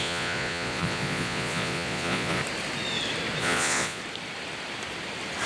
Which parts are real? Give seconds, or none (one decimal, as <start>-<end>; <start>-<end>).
2.4-3.4; 4.0-5.5